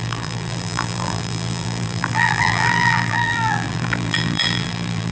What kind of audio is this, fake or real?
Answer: fake